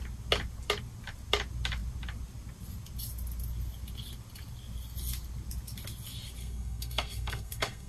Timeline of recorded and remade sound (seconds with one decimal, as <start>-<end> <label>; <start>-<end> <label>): 0.0-6.4 recorded; 6.4-7.9 remade